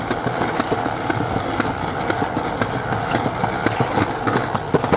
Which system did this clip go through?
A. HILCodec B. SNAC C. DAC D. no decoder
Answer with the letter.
D